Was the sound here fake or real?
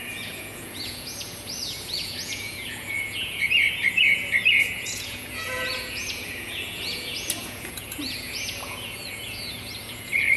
fake